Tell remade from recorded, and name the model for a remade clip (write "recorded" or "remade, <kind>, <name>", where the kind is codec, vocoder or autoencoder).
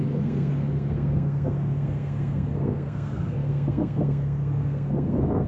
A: remade, codec, SNAC